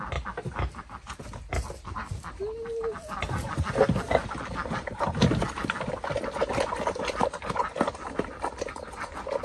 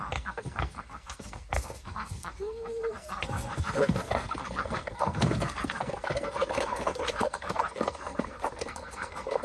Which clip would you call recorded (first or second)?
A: first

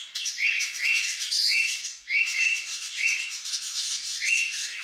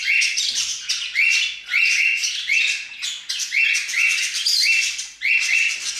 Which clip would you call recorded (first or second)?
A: second